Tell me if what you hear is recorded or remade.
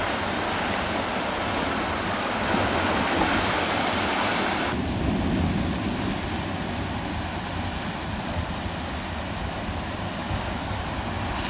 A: recorded